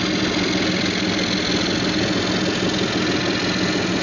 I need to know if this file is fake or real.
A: real